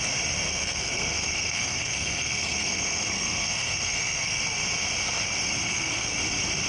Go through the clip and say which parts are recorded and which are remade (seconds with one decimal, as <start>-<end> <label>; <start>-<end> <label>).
0.0-0.4 recorded; 0.4-4.4 remade; 4.4-5.6 recorded; 5.6-6.1 remade; 6.1-6.7 recorded